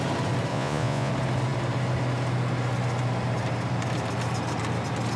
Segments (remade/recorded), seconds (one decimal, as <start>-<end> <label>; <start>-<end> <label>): 0.0-0.5 recorded; 0.5-1.1 remade; 1.1-5.2 recorded